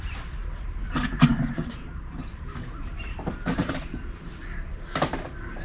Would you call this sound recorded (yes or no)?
no